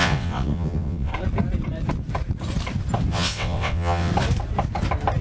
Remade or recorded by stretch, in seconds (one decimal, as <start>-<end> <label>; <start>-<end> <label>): 0.0-1.1 remade; 1.1-3.1 recorded; 3.1-4.1 remade; 4.1-5.2 recorded